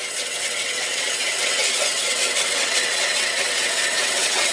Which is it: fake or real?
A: fake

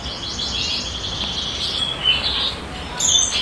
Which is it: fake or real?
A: real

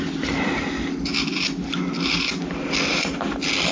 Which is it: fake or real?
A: real